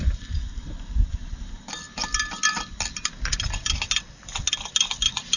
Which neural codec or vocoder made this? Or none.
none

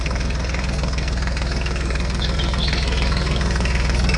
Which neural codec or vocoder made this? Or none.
codec, SNAC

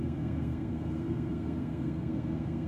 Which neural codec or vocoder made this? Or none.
codec, SNAC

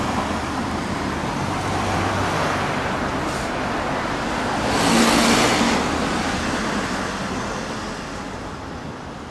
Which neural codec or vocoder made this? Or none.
none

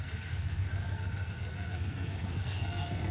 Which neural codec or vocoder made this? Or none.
codec, SNAC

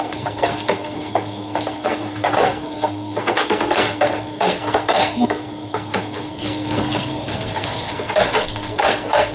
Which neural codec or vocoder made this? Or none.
codec, SNAC